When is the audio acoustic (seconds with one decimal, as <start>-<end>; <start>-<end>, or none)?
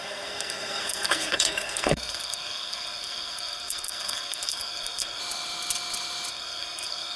5.2-6.3